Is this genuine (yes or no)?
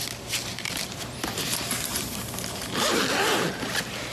yes